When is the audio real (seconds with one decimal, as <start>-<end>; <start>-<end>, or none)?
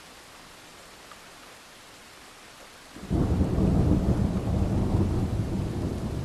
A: 0.0-6.2